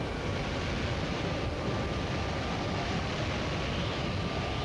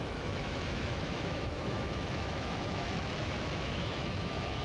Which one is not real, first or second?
second